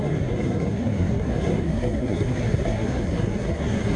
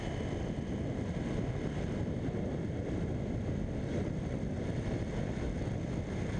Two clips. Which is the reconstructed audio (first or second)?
first